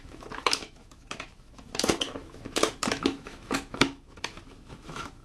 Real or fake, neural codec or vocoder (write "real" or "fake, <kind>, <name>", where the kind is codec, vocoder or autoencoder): fake, autoencoder, DAC-VAE